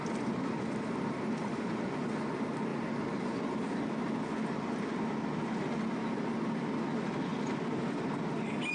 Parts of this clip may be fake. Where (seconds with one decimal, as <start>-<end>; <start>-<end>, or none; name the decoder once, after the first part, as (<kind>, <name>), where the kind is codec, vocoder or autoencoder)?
none